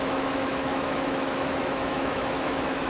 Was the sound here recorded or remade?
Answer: remade